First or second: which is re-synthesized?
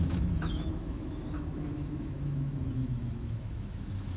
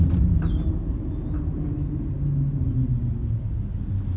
first